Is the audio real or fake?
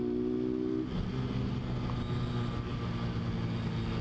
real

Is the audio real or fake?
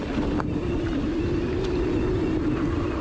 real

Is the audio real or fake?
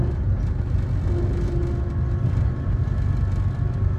real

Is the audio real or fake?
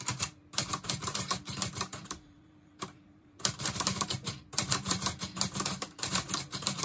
fake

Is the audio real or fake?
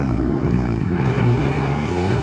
fake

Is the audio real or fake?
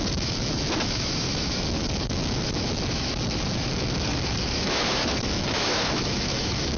fake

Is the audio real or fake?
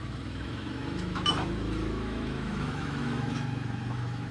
fake